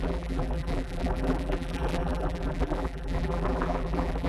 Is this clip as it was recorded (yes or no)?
no